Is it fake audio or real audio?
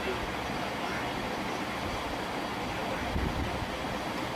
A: real